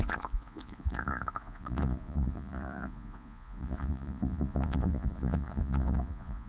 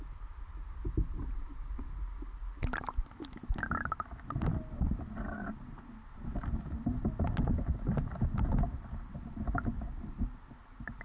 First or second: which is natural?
second